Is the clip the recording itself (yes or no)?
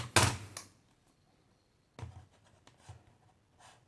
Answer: yes